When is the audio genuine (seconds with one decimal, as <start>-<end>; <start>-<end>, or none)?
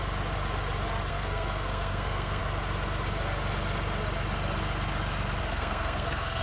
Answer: 0.0-1.1; 2.4-5.4